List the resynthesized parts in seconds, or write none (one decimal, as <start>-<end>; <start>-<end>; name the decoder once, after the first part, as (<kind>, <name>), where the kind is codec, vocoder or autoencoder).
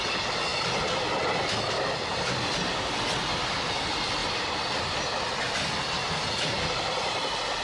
none